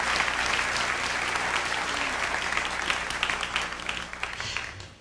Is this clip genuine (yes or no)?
yes